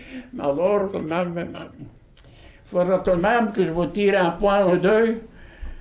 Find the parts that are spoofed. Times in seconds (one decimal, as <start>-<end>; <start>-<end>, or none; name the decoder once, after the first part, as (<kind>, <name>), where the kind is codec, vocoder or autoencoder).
0.8-1.8 (vocoder, HiFi-GAN)

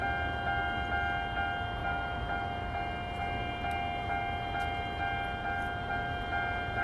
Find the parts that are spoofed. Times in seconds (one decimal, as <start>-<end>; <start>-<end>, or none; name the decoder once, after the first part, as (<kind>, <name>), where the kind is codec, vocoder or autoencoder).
none

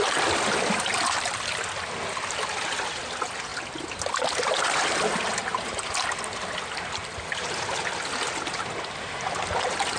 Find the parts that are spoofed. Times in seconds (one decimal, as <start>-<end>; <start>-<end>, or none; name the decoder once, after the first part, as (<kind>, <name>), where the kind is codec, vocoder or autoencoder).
none

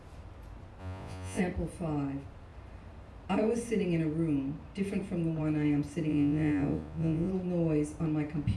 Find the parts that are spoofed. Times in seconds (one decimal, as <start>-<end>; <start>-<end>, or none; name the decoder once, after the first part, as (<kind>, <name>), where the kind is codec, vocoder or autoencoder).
0.8-1.4 (vocoder, Vocos); 6.1-7.3

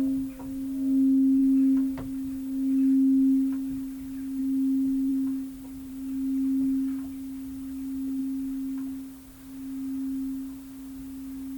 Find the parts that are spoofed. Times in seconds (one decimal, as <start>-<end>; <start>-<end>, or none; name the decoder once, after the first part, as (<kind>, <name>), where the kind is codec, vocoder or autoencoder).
none

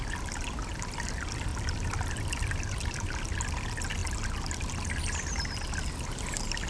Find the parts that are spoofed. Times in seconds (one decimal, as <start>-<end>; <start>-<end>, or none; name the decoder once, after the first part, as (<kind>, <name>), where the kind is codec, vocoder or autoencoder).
none

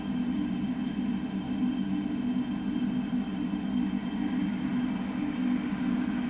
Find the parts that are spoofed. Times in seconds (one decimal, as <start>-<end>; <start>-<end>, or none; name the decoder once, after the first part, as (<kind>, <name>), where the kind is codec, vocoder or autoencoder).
none